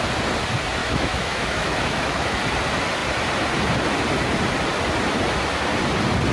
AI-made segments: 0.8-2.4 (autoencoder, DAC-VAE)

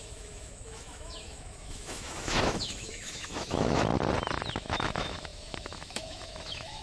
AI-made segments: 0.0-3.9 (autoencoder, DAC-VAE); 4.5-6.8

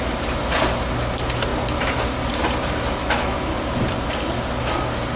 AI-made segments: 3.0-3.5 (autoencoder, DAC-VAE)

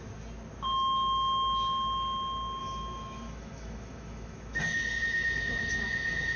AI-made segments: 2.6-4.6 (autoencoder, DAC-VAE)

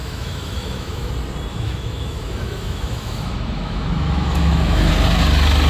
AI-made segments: 0.0-1.1 (autoencoder, DAC-VAE); 1.5-4.9

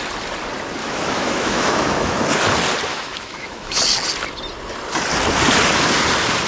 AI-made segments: 0.8-2.2 (autoencoder, DAC-VAE); 2.9-3.8